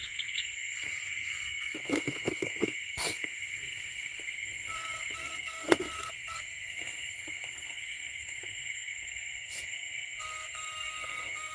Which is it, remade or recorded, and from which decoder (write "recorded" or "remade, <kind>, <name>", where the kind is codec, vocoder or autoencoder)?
remade, codec, SNAC